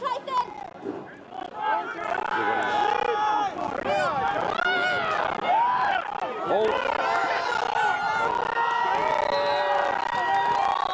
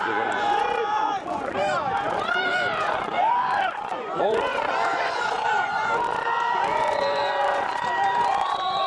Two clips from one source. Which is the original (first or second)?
first